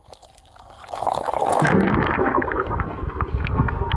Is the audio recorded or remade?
remade